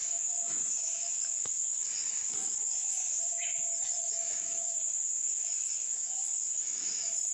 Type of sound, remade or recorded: remade